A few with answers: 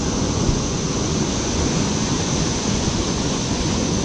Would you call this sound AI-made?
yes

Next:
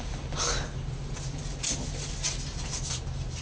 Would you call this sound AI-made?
no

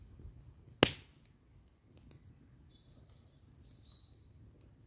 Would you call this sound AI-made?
no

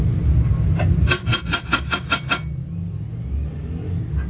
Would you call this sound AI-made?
no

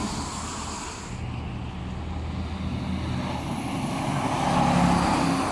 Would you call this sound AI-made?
no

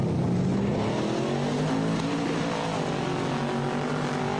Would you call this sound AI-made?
no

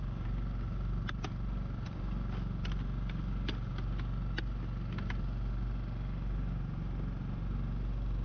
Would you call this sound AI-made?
no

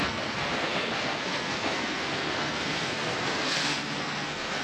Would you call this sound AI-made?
yes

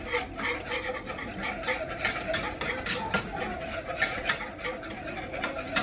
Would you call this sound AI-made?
no